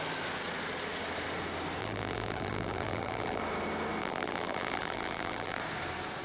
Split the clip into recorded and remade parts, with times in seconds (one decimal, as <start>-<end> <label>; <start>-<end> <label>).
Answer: 0.0-1.8 recorded; 1.8-3.4 remade; 3.4-4.0 recorded; 4.0-5.6 remade; 5.6-6.2 recorded